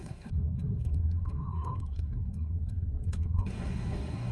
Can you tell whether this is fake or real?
fake